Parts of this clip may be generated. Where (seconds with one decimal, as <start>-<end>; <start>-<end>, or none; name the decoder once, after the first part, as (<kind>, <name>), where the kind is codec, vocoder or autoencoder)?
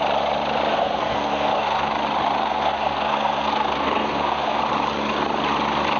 0.7-1.9 (codec, SNAC); 2.4-4.6